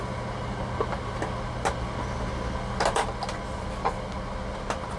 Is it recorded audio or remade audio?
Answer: recorded